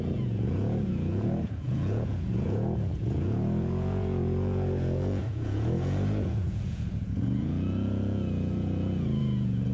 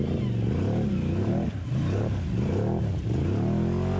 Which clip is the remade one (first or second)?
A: first